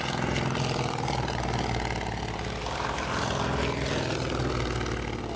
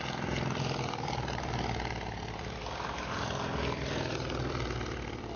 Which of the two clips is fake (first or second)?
second